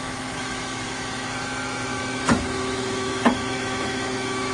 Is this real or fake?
fake